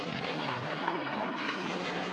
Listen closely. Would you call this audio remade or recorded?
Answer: remade